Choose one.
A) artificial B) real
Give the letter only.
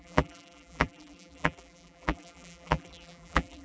A